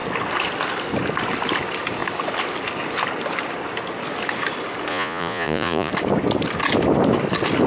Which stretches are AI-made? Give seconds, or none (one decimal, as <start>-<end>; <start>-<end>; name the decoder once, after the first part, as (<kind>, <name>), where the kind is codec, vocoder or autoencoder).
4.9-5.9 (vocoder, Vocos)